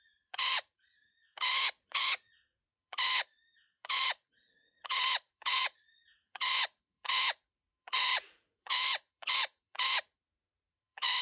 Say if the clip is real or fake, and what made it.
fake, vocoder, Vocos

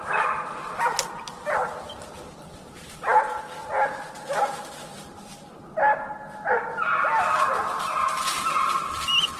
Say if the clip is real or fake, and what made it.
real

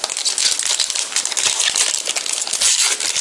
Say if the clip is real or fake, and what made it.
real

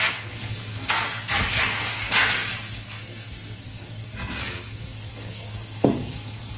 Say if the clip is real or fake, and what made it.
fake, codec, SNAC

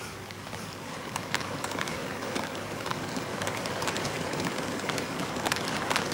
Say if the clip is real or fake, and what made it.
fake, codec, DAC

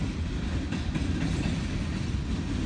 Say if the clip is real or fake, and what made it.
real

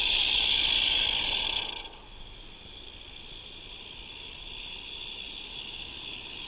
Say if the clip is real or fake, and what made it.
real